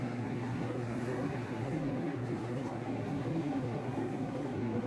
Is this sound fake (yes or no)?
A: yes